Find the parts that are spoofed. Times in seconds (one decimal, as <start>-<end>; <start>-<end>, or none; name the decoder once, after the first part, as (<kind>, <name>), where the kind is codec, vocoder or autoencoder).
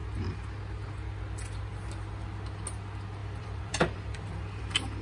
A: 3.2-4.6 (vocoder, BigVGAN v2)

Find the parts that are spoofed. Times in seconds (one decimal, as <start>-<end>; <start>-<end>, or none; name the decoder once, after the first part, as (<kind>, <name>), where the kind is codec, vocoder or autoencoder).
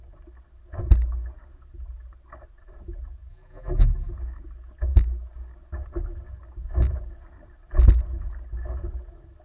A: 3.3-4.1 (vocoder, BigVGAN v2)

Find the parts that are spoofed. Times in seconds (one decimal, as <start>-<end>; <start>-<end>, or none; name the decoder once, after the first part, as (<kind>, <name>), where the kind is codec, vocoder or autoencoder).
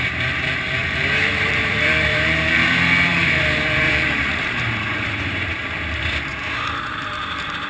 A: 0.0-6.3 (vocoder, BigVGAN v2); 6.9-7.7